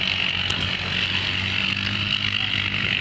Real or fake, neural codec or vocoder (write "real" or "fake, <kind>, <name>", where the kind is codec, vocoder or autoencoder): real